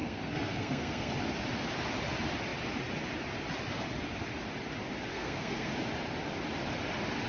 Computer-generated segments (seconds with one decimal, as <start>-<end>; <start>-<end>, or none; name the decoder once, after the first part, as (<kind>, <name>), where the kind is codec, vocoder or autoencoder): 0.0-1.1 (codec, SNAC); 5.1-5.7